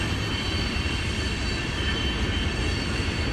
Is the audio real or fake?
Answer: real